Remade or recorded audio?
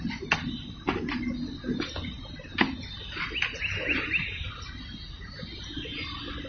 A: recorded